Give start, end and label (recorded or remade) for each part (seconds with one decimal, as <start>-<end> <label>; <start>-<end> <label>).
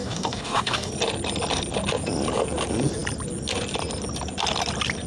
0.0-0.9 remade; 0.9-5.1 recorded